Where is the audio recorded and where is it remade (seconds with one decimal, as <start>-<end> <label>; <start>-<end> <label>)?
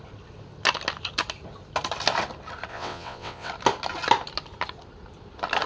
0.0-2.7 recorded; 2.7-3.5 remade; 3.5-5.7 recorded